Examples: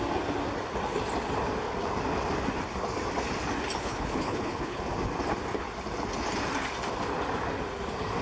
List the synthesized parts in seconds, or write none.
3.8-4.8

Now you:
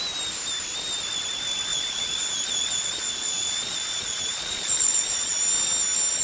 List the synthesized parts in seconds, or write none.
1.7-5.4

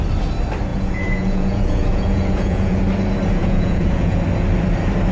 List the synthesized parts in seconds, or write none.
0.7-2.8; 3.4-4.2

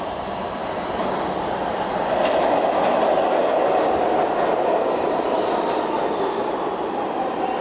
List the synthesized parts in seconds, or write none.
none

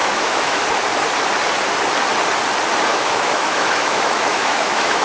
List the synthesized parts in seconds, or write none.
0.0-0.6; 2.9-5.0